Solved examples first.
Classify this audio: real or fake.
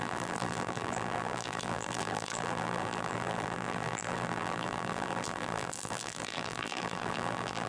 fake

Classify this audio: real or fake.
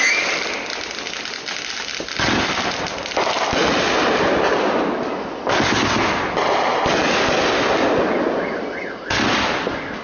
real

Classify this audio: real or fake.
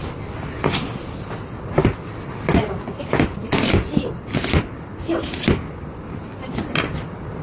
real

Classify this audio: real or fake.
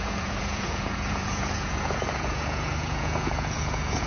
fake